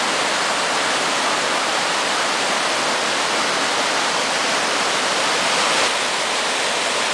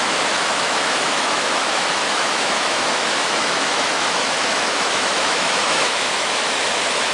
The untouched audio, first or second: first